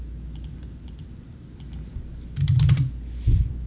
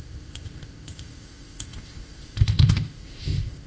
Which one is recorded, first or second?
first